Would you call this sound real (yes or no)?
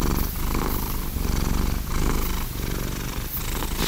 no